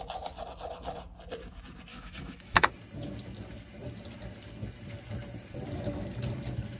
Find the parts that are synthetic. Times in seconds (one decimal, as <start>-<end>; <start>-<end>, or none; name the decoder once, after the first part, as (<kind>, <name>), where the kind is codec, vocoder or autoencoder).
1.9-2.7 (autoencoder, DAC-VAE)